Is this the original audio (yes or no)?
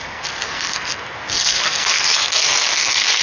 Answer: no